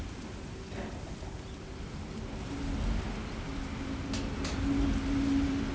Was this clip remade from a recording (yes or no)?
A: no